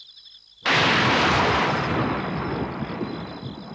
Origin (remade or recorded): recorded